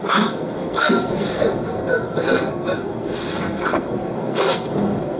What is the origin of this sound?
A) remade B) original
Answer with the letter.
A